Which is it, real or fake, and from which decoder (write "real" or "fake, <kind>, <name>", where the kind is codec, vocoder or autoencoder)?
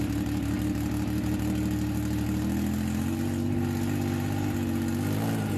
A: real